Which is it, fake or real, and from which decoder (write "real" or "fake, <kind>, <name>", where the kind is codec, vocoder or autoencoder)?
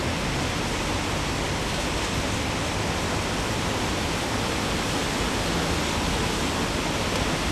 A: real